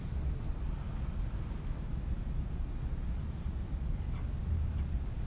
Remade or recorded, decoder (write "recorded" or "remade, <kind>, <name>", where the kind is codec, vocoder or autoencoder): recorded